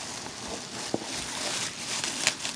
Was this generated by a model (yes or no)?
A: no